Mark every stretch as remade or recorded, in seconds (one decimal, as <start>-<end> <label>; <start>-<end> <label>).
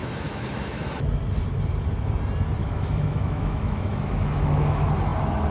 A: 0.0-0.9 remade; 0.9-2.6 recorded; 2.6-4.9 remade; 4.9-5.5 recorded